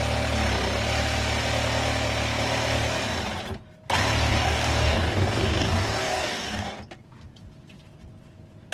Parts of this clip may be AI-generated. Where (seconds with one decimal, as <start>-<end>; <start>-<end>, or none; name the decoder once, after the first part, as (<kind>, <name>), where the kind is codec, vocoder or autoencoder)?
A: 4.3-6.8 (codec, DAC)